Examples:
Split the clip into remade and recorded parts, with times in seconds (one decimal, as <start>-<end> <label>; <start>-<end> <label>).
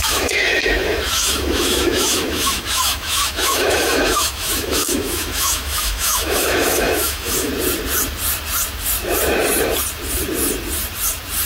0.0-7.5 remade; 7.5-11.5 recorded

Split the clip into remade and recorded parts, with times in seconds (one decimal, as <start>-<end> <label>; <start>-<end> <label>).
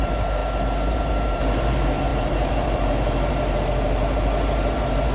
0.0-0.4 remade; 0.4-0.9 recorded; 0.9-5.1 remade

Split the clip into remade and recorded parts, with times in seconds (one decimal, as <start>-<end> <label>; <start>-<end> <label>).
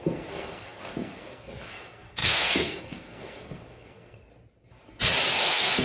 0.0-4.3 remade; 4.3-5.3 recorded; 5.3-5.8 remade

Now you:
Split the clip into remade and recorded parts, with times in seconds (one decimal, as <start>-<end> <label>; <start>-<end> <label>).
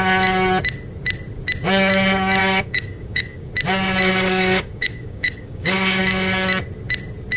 0.0-2.4 recorded; 2.4-3.5 remade; 3.5-4.1 recorded; 4.1-6.0 remade; 6.0-7.4 recorded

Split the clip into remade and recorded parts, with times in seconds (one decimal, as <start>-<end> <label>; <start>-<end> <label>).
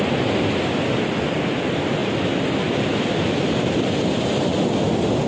0.0-5.3 recorded